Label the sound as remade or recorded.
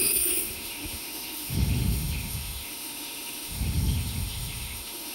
remade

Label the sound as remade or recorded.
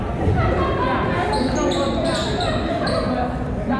recorded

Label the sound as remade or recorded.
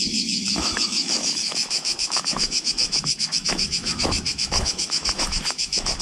remade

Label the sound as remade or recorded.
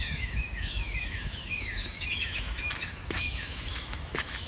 remade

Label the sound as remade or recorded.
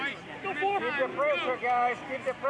recorded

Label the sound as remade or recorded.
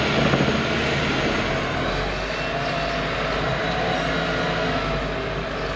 recorded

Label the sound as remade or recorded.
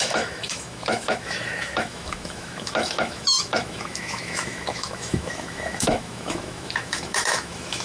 remade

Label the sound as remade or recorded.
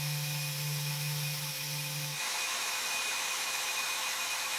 remade